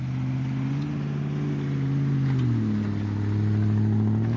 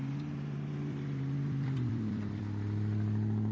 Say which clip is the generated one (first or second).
second